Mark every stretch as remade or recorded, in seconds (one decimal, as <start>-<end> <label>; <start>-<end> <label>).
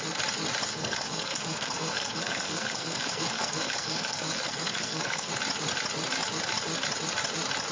0.0-0.7 recorded; 0.7-5.3 remade; 5.3-7.7 recorded